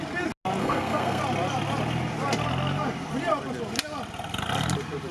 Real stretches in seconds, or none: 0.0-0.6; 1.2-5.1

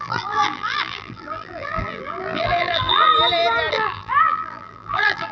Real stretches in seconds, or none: 3.1-3.7

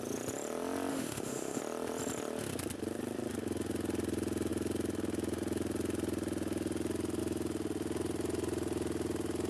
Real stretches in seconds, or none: 0.0-0.9; 1.6-9.5